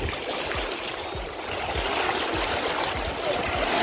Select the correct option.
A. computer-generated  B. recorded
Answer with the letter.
B